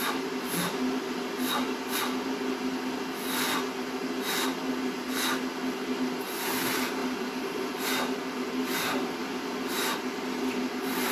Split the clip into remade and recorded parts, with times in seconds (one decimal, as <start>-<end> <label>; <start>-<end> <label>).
0.0-7.0 recorded; 7.0-7.7 remade; 7.7-9.2 recorded; 9.2-9.7 remade; 9.7-11.1 recorded